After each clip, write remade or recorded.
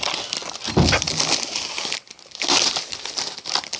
recorded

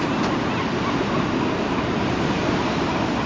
recorded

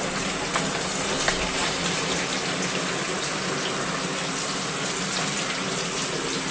recorded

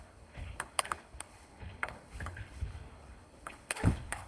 remade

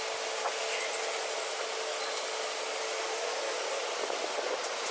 recorded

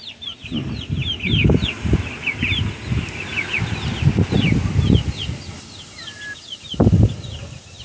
recorded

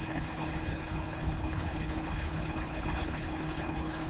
remade